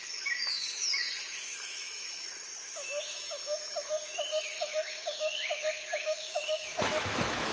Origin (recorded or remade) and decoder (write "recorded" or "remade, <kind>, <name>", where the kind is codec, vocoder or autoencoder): remade, autoencoder, DAC-VAE